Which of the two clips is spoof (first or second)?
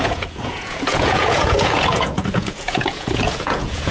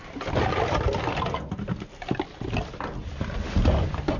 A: first